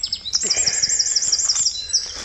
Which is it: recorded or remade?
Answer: recorded